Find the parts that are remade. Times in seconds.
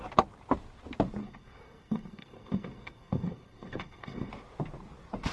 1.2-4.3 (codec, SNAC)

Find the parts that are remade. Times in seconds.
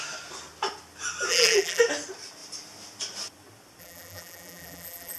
1.3-1.8 (vocoder, BigVGAN v2); 3.8-5.2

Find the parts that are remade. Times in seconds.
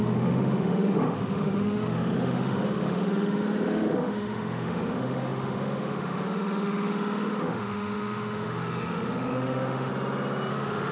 0.0-9.9 (autoencoder, DAC-VAE); 10.5-10.9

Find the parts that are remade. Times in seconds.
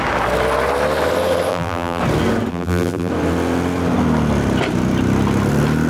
1.5-2.0 (vocoder, BigVGAN v2); 2.5-3.1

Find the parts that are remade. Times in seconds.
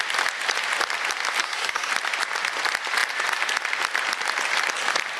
1.4-1.9 (codec, SNAC)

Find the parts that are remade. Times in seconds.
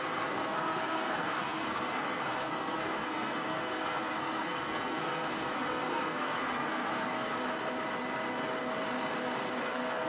0.0-7.3 (codec, SNAC); 9.6-10.1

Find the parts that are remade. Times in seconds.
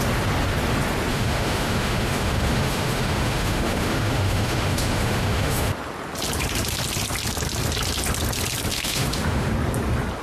1.1-5.7 (autoencoder, DAC-VAE); 8.7-9.5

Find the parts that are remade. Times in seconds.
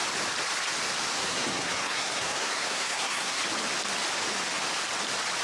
1.2-3.4 (codec, SNAC)